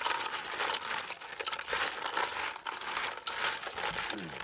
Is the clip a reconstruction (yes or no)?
no